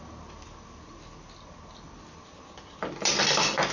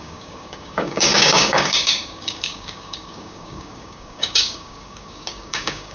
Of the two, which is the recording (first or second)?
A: first